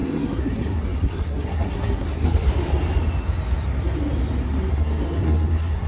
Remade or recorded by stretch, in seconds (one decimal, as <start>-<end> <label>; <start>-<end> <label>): 0.0-2.5 remade; 2.5-4.7 recorded; 4.7-5.9 remade